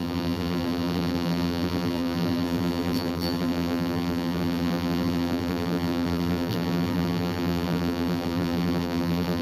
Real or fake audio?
fake